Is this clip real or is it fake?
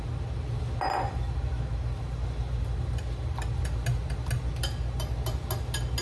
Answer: real